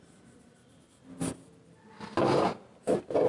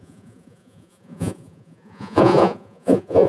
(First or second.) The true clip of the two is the first